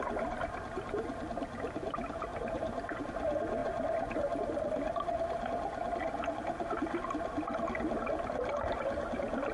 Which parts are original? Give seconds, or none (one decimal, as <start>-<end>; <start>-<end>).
0.0-9.5